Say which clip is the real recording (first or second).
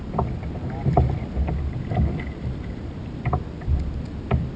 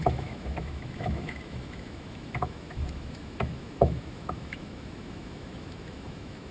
first